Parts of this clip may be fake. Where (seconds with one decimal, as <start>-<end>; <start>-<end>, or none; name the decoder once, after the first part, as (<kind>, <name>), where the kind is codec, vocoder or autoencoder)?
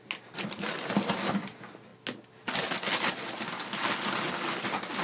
none